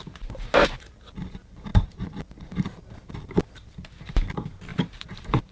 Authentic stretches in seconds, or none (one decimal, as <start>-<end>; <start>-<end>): 0.0-1.7; 2.8-4.7